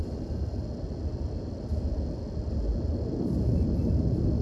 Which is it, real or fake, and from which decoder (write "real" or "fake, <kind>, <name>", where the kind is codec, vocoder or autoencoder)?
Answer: real